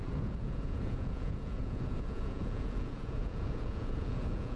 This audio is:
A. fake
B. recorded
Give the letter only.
A